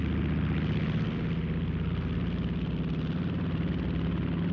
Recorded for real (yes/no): yes